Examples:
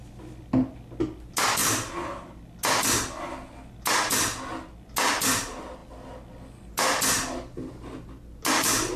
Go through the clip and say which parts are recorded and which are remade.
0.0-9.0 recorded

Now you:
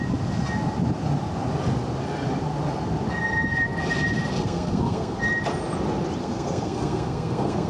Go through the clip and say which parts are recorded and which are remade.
0.0-4.4 recorded; 4.4-5.2 remade; 5.2-6.2 recorded; 6.2-7.7 remade

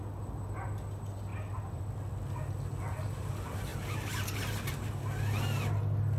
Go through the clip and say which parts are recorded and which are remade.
0.0-6.2 recorded